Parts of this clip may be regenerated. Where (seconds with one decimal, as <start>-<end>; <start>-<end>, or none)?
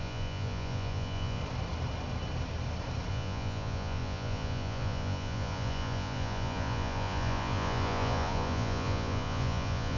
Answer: 0.0-1.4; 3.1-10.0